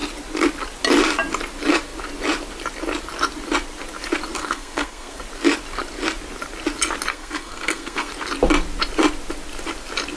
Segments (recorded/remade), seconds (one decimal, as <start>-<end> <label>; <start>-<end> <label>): 0.0-4.4 recorded; 4.4-5.2 remade; 5.2-7.1 recorded; 7.1-8.1 remade; 8.1-10.2 recorded